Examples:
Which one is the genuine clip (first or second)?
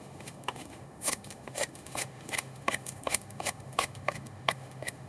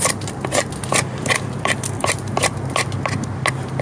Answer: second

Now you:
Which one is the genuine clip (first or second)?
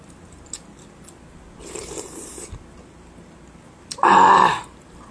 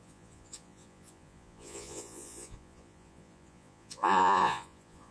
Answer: first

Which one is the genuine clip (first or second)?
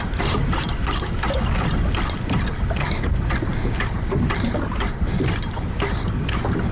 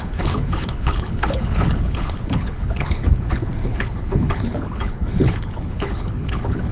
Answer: first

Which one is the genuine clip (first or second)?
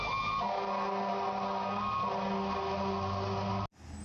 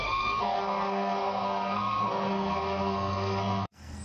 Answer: first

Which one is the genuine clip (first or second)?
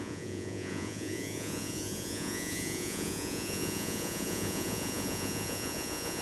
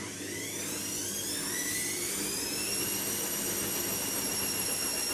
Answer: second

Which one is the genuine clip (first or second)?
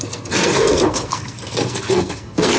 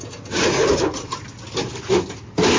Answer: second